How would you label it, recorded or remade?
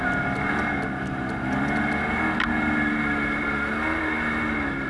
recorded